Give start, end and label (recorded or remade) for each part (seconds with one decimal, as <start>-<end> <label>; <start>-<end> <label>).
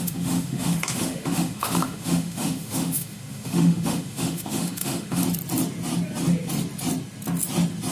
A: 0.0-5.2 remade; 5.2-7.9 recorded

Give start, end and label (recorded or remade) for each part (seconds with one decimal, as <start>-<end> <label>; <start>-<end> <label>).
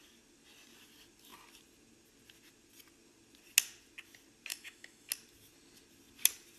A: 0.0-4.5 recorded; 4.5-5.1 remade; 5.1-6.6 recorded